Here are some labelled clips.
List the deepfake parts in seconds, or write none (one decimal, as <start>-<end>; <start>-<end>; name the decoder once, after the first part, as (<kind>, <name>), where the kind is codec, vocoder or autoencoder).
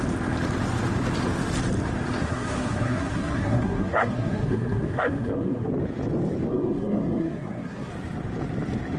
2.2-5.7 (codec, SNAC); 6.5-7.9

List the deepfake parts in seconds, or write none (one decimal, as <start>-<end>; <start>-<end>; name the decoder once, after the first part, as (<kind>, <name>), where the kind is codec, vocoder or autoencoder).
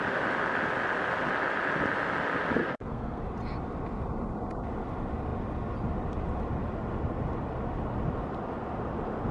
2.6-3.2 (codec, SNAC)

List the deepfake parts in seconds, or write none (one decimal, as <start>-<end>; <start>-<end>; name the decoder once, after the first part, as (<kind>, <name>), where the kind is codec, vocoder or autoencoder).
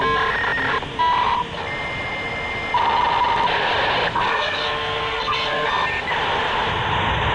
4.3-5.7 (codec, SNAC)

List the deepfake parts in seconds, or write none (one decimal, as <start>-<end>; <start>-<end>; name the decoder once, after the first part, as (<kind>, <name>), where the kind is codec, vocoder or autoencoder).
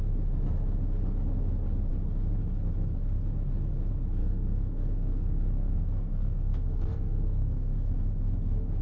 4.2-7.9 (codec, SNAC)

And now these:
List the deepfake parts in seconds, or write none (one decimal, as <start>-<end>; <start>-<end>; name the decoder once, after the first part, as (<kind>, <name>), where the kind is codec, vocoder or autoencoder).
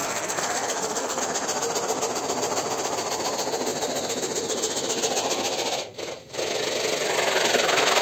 0.0-1.2 (codec, SNAC)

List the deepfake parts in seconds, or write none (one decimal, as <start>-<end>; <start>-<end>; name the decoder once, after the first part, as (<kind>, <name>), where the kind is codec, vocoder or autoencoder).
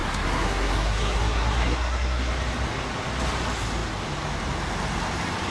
0.0-2.3 (codec, SNAC)